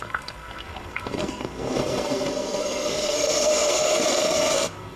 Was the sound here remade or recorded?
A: remade